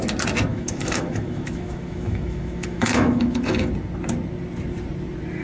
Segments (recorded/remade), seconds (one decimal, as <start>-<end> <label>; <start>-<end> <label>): 0.0-0.5 recorded; 0.5-3.7 remade; 3.7-5.4 recorded